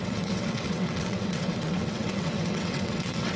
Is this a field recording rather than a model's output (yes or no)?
no